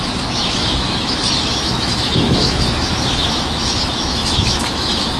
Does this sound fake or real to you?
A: fake